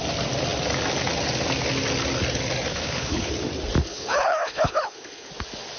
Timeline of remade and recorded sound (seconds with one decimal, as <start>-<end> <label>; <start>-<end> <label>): 0.0-2.7 recorded; 2.7-3.3 remade; 3.3-3.8 recorded; 3.8-5.3 remade; 5.3-5.8 recorded